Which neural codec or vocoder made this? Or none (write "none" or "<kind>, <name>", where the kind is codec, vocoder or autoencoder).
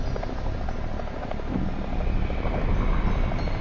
none